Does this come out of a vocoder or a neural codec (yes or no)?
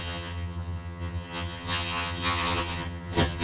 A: yes